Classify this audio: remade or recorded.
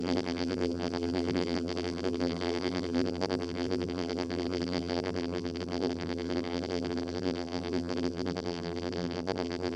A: remade